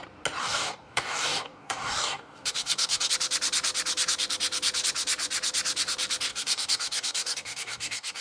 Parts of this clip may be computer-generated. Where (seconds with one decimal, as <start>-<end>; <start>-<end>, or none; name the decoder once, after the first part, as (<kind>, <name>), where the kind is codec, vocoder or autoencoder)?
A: 0.4-3.1 (codec, DAC); 6.3-8.2